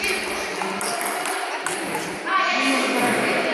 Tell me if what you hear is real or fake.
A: real